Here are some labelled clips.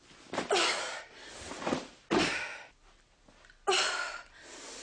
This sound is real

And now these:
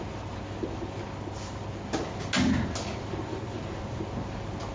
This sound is real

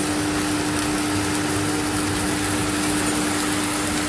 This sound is real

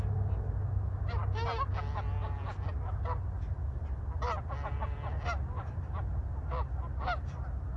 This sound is real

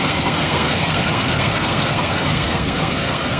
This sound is fake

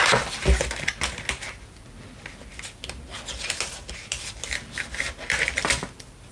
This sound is real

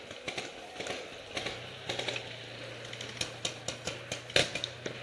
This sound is real